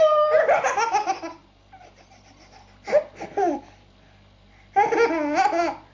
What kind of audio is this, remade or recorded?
recorded